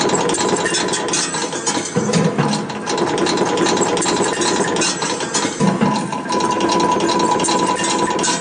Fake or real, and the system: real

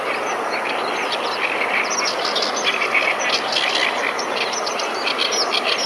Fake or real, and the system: real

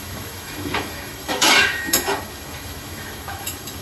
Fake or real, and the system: fake, autoencoder, DAC-VAE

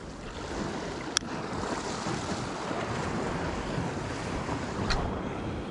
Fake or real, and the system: real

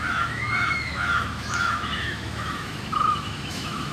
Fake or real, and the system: fake, autoencoder, DAC-VAE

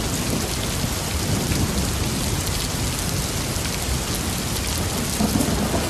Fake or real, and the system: real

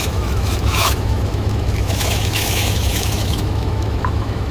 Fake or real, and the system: fake, autoencoder, DAC-VAE